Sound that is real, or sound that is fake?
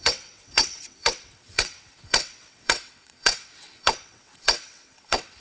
fake